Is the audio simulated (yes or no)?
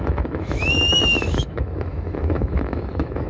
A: yes